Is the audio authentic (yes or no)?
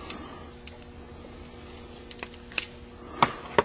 yes